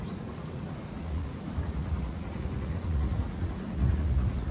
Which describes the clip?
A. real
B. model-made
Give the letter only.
B